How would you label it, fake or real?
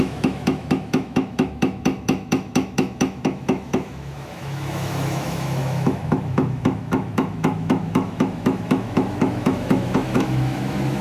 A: fake